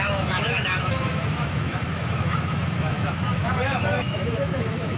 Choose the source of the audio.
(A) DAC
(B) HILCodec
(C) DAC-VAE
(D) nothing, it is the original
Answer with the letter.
C